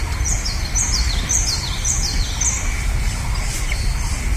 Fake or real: real